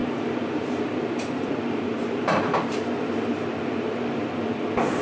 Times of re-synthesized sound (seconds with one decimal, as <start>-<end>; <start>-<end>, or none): 0.0-5.0